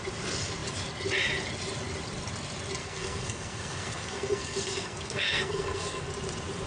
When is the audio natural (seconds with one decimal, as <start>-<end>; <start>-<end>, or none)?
0.0-2.8; 6.1-6.7

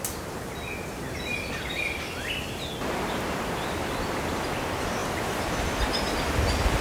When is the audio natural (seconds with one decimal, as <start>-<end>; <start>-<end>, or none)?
0.0-6.8

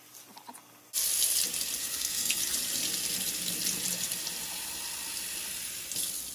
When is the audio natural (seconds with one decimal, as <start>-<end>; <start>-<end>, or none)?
0.0-1.8; 2.4-6.3

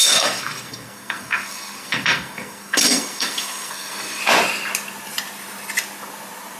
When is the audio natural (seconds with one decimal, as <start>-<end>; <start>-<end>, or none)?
4.2-6.6

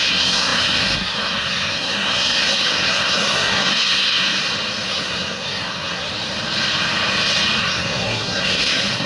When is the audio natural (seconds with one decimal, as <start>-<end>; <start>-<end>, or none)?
4.4-4.9; 6.1-7.6

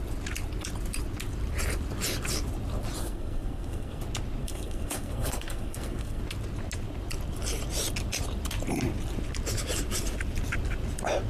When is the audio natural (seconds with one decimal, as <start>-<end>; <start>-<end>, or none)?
0.0-3.0; 4.0-4.4; 6.2-11.3